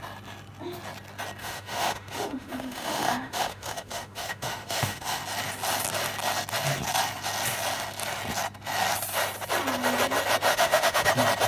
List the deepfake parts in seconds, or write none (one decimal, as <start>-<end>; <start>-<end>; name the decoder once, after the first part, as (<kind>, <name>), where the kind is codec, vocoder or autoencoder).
1.4-5.2 (autoencoder, DAC-VAE); 10.5-11.1